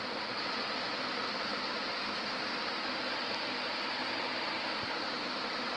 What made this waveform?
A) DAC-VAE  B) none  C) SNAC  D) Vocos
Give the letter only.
B